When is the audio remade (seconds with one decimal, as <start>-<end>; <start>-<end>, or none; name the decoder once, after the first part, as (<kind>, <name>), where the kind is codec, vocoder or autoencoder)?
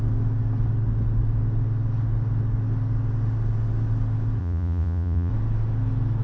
4.4-5.3 (vocoder, Vocos)